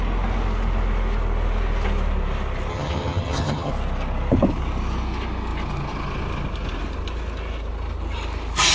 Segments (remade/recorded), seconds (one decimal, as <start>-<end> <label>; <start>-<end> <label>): 0.0-2.7 recorded; 2.7-3.7 remade; 3.7-8.7 recorded